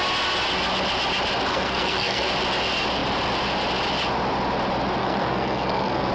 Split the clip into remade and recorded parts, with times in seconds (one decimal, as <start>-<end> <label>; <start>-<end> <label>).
0.0-1.5 recorded; 1.5-2.3 remade; 2.3-5.0 recorded; 5.0-6.1 remade